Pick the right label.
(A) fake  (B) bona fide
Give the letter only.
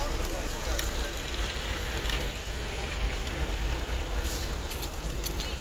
B